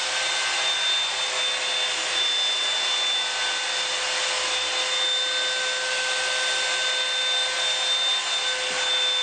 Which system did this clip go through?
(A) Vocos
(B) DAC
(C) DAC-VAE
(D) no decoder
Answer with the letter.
D